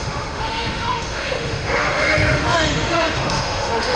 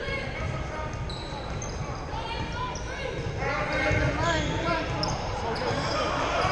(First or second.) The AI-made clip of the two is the first